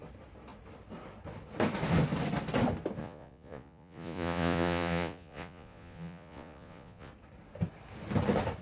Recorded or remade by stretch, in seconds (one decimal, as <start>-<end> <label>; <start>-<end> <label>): 0.0-3.0 recorded; 3.0-7.1 remade; 7.1-8.6 recorded